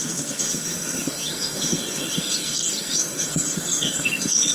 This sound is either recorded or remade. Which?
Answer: remade